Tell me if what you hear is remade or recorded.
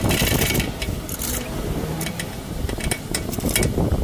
recorded